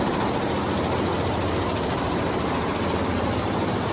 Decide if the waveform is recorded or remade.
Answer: recorded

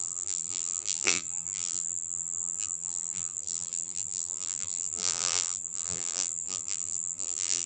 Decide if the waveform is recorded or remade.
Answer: remade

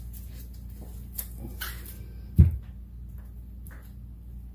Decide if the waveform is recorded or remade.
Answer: recorded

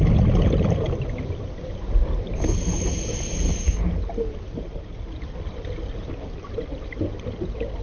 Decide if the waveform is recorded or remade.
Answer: recorded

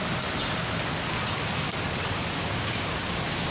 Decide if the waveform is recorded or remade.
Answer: recorded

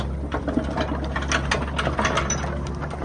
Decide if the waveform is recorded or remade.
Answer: recorded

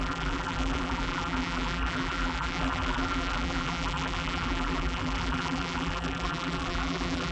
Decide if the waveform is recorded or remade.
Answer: remade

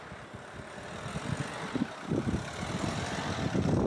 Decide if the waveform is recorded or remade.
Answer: recorded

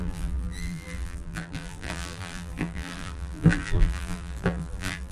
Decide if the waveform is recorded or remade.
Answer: remade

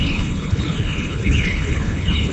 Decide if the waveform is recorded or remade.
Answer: remade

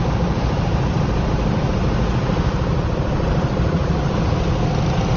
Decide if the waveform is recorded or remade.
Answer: recorded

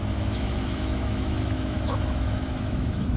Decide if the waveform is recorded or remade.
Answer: remade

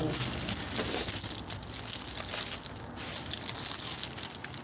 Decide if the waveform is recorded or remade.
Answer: recorded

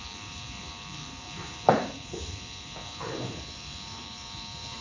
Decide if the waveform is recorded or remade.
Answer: remade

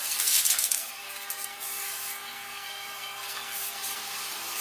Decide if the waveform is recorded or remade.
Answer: remade